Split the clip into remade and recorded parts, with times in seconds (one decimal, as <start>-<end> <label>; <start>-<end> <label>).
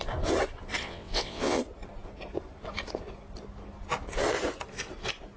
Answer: 0.0-0.8 recorded; 0.8-1.6 remade; 1.6-5.4 recorded